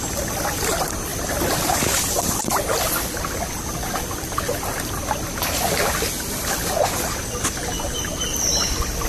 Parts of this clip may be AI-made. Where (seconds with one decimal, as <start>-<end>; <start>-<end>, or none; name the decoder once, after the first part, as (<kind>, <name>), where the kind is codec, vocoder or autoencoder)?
none